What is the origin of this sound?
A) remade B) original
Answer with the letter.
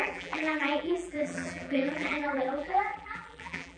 A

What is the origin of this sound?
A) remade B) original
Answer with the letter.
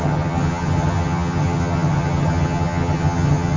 A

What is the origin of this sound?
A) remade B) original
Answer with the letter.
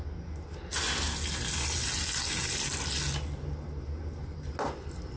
B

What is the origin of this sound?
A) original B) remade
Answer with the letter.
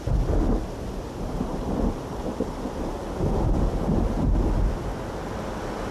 A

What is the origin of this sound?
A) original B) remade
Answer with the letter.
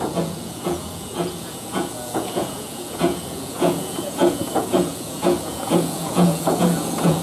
B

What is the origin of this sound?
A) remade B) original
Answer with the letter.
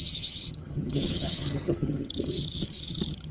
A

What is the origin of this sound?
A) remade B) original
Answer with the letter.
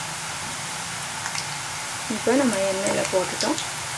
B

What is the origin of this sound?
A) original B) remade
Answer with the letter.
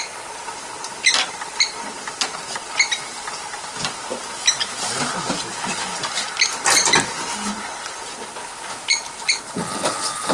A